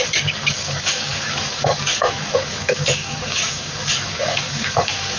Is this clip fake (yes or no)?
yes